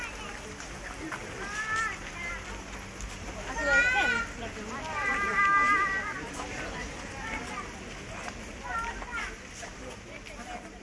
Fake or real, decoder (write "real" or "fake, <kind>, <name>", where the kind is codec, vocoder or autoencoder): real